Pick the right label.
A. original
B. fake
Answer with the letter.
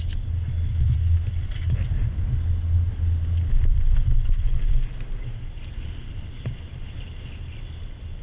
A